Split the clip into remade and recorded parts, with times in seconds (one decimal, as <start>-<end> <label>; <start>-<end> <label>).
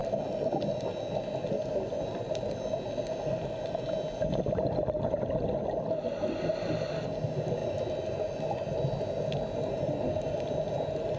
0.0-11.2 recorded